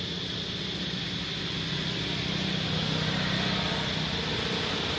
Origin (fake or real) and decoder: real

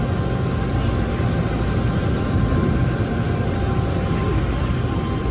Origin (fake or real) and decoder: real